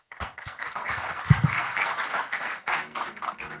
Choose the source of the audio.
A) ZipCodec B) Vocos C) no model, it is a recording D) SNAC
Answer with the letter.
D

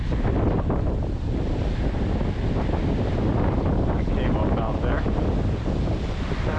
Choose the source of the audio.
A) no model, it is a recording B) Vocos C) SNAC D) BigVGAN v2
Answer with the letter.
A